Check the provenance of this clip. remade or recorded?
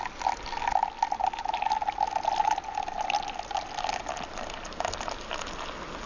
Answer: recorded